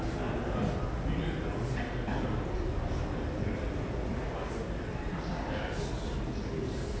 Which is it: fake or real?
real